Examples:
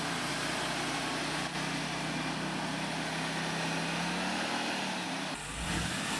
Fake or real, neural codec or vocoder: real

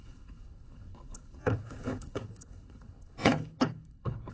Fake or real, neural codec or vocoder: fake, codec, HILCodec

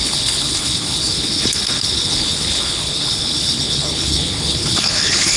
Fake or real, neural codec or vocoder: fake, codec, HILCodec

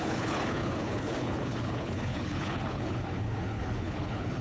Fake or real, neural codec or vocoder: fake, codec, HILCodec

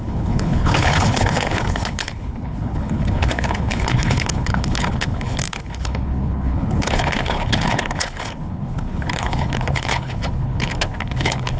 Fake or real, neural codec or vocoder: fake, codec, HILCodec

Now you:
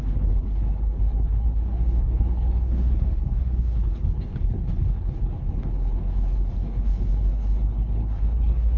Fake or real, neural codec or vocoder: fake, codec, HILCodec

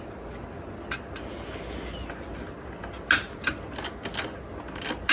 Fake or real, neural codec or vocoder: real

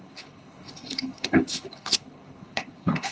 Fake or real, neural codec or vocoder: fake, codec, HILCodec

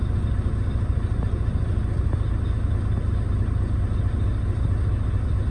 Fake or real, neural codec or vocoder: real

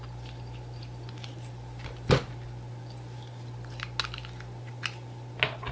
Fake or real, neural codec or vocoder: real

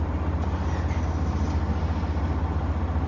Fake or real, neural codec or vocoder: real